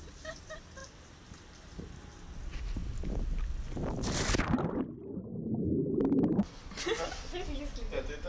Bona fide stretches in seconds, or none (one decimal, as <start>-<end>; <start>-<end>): 0.0-0.8; 2.0-8.3